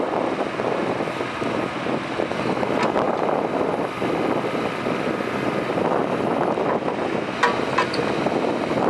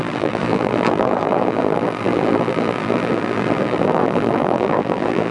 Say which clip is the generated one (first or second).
second